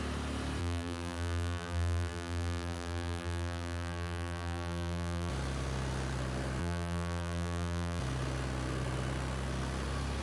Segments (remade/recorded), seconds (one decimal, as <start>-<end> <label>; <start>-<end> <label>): 0.0-0.6 recorded; 0.6-5.3 remade; 5.3-6.6 recorded; 6.6-8.0 remade; 8.0-10.2 recorded